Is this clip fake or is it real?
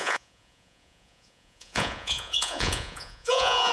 fake